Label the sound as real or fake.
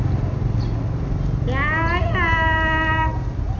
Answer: real